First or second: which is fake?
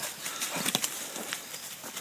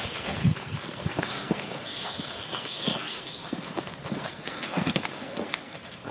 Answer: second